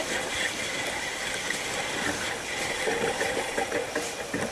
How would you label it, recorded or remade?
recorded